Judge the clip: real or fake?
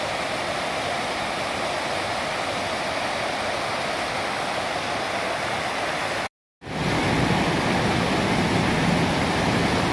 real